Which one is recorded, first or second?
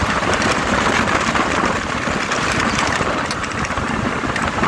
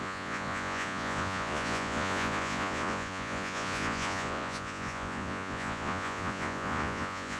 first